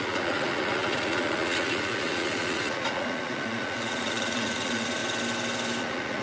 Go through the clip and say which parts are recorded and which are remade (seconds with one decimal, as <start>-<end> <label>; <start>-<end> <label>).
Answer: 0.0-5.0 remade; 5.0-5.8 recorded; 5.8-6.2 remade